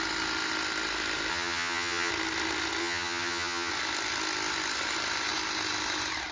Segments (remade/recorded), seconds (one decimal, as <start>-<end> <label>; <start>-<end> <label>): 0.0-1.3 recorded; 1.3-2.1 remade; 2.1-2.8 recorded; 2.8-3.7 remade; 3.7-6.3 recorded